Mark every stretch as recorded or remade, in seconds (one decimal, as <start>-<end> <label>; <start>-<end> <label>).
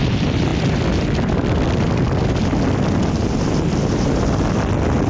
0.0-5.1 recorded